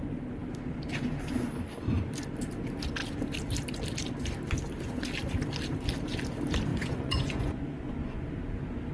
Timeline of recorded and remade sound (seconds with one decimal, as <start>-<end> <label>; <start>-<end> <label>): 0.0-6.7 recorded; 6.7-8.3 remade; 8.3-8.9 recorded